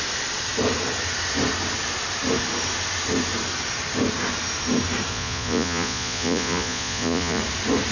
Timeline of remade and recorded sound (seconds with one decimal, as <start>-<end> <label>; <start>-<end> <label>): 0.0-5.1 recorded; 5.1-7.4 remade; 7.4-7.9 recorded